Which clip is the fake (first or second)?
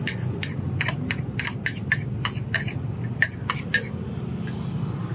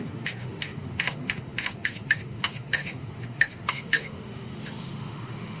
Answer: second